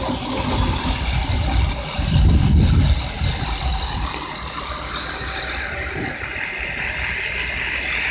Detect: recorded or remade recorded